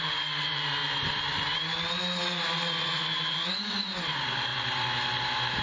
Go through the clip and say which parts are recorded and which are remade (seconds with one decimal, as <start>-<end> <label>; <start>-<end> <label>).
0.0-5.6 recorded